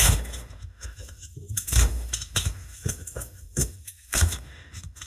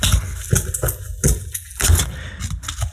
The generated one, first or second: first